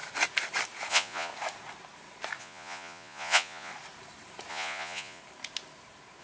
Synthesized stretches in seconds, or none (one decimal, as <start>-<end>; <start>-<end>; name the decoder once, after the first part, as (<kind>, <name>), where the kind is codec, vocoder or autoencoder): 0.9-1.3 (vocoder, Vocos); 2.4-3.7; 4.5-5.2